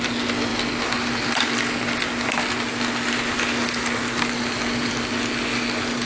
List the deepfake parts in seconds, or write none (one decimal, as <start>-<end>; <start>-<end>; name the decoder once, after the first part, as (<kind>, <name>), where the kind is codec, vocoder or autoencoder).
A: none